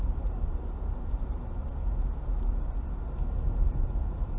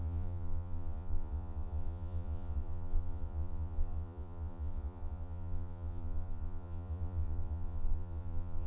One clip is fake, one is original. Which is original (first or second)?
first